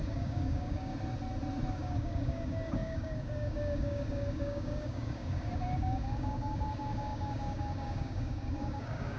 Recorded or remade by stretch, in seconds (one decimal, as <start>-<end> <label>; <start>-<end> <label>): 0.0-0.9 remade; 0.9-1.7 recorded; 1.7-9.2 remade